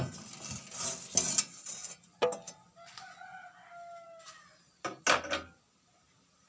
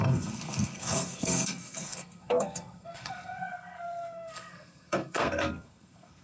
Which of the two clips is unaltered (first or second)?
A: first